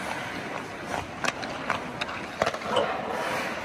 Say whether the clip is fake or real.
real